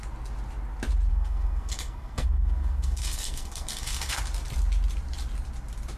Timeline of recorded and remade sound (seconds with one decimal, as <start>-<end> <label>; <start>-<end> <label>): 0.0-1.1 recorded; 1.1-4.2 remade; 4.2-6.0 recorded